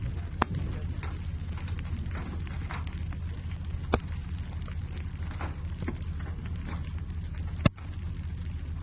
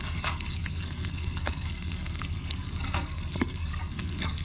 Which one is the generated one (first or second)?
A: second